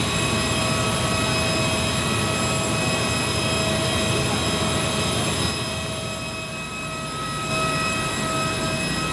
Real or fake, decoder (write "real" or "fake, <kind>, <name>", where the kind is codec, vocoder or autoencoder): real